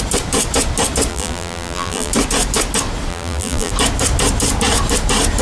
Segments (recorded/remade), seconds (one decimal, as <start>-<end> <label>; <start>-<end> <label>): 0.0-1.1 recorded; 1.1-2.1 remade; 2.1-3.1 recorded; 3.1-3.7 remade; 3.7-5.4 recorded